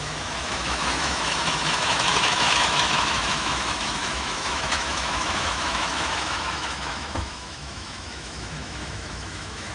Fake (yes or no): yes